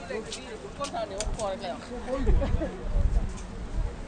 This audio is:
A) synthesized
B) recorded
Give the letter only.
B